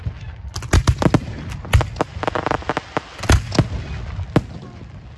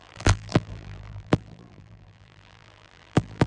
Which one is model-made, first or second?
second